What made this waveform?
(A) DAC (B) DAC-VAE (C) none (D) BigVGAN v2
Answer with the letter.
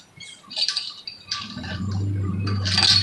C